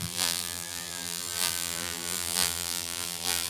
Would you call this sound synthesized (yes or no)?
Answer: yes